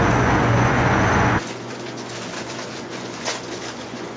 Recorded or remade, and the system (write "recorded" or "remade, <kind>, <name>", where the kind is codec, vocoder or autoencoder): remade, vocoder, Vocos